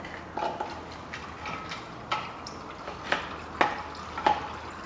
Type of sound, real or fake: real